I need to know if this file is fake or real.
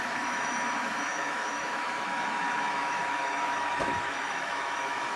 fake